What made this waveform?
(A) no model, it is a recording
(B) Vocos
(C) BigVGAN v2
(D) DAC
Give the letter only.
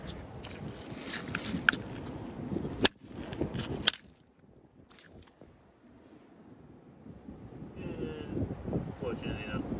A